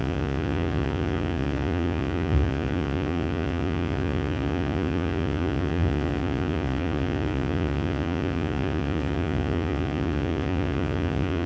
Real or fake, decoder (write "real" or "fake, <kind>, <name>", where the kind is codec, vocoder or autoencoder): fake, vocoder, Vocos